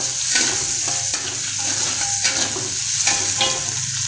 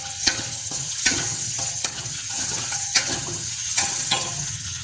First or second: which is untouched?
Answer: first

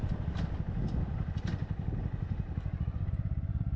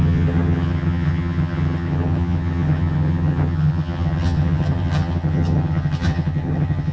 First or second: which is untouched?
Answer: first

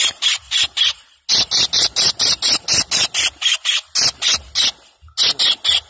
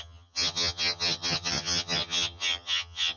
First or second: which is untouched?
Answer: first